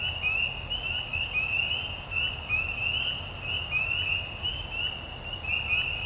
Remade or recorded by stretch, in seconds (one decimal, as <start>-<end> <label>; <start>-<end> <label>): 0.0-6.1 recorded